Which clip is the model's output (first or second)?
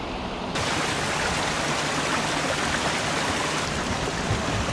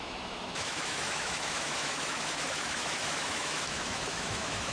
second